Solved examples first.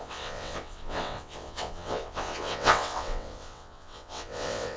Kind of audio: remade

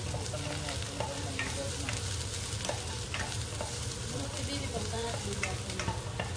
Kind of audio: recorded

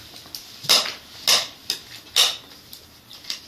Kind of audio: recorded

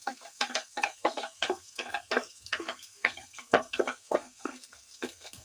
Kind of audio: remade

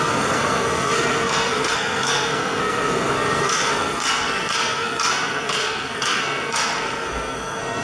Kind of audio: remade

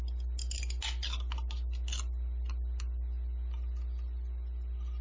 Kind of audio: recorded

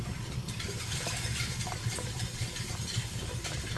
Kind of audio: remade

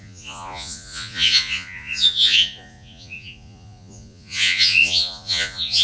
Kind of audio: remade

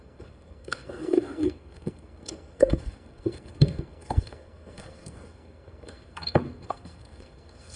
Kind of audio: remade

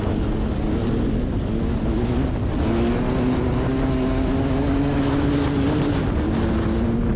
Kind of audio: recorded